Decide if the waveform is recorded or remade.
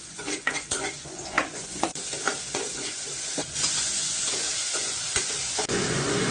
remade